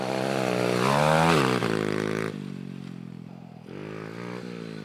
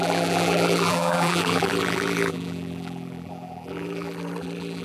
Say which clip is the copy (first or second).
second